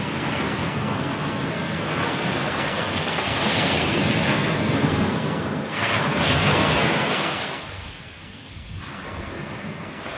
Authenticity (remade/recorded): remade